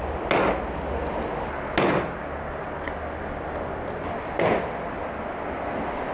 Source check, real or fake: real